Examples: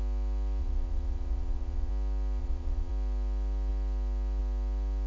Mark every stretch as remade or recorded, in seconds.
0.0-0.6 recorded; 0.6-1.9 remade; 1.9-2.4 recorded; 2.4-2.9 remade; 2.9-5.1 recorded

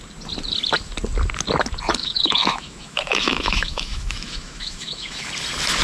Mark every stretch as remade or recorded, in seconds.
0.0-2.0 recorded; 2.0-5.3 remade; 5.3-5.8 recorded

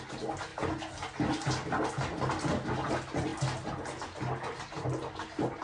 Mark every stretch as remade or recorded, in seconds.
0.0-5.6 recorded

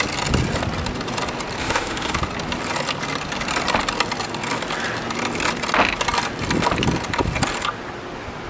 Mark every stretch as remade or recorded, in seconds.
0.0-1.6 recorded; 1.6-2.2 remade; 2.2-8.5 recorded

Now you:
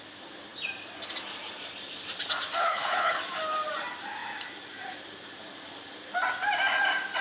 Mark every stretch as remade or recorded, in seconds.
0.0-2.6 recorded; 2.6-3.2 remade; 3.2-7.2 recorded

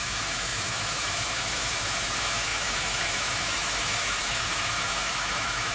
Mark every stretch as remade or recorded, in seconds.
0.0-5.7 remade